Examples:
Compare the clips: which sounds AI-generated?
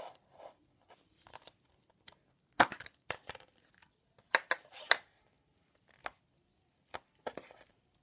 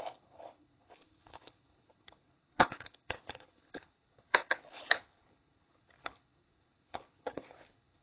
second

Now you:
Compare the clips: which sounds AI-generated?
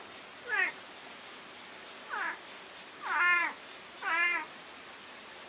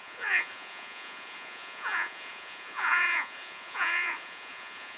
second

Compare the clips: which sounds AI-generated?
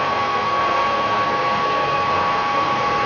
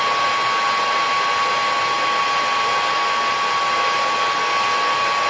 first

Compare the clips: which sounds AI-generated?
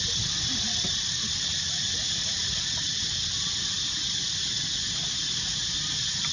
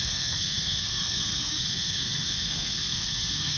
second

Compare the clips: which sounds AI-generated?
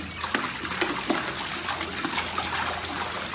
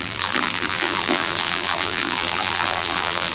second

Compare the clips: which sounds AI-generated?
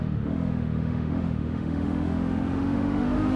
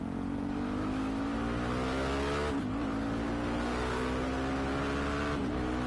first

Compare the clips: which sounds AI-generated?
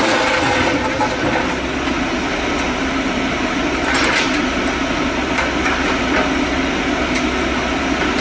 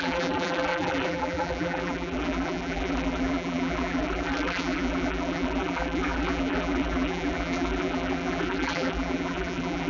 second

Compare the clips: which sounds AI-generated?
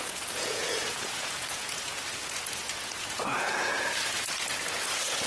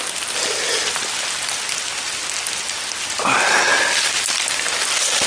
first